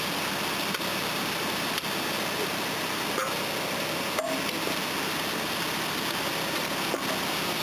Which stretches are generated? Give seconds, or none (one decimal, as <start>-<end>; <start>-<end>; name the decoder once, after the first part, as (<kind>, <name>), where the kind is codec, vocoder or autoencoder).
none

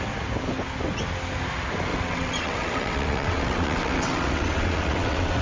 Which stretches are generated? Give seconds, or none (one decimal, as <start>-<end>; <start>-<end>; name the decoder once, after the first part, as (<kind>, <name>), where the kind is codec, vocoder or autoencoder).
1.9-5.4 (vocoder, WaveNeXt)

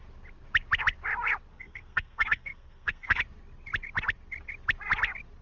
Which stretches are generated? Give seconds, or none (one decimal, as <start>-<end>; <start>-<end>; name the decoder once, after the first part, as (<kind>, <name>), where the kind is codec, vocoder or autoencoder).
1.5-3.2 (codec, SNAC)

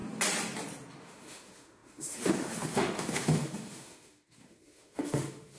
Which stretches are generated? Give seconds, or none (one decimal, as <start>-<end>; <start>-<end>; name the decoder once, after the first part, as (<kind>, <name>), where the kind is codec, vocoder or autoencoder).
1.0-5.6 (autoencoder, DAC-VAE)

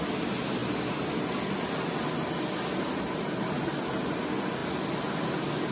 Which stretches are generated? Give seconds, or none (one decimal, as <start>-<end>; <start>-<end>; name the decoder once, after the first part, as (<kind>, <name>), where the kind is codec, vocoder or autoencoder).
none

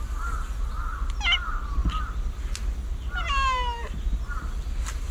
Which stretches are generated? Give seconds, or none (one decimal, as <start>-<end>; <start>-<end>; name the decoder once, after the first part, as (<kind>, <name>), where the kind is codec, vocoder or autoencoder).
none